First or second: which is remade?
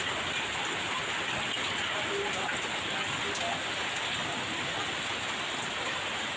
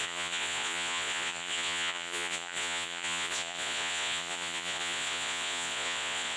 second